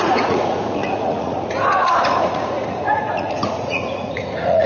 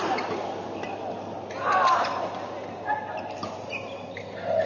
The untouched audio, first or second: second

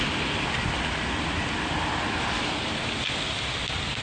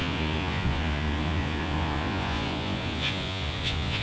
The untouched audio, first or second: first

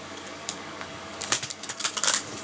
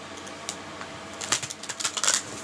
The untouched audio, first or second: second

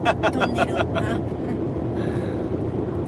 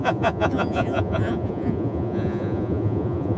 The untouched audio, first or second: first